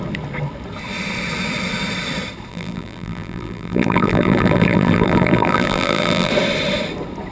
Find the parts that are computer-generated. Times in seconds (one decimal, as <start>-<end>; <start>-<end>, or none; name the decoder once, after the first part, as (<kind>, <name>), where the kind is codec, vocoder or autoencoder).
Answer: 2.5-6.3 (vocoder, BigVGAN v2)